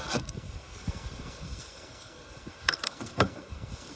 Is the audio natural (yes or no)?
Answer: no